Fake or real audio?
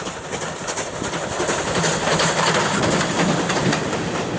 real